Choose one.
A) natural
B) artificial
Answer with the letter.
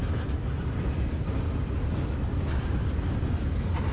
A